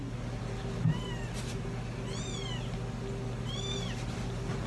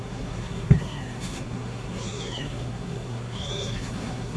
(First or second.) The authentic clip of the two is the first